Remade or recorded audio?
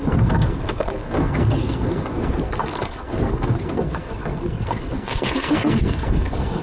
remade